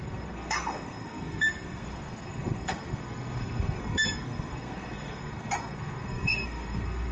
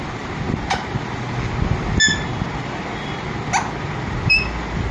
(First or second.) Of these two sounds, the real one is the second